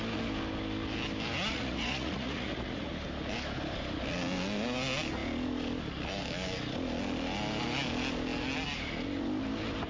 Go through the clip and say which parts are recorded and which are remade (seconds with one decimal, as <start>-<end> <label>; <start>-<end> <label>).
0.0-1.5 recorded; 1.5-2.9 remade; 2.9-9.9 recorded